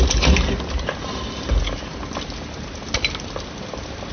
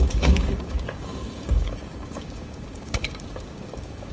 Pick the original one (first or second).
first